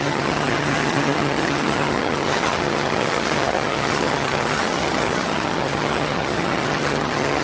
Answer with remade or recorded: remade